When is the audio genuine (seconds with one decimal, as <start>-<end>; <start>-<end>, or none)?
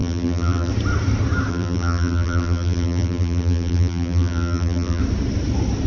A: 0.7-1.5; 5.0-5.9